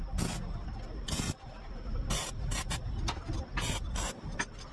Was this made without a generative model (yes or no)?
yes